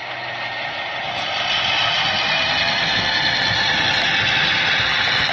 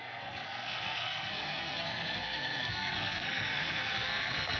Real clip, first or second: first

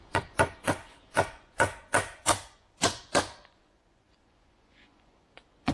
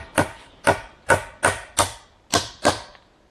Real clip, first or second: second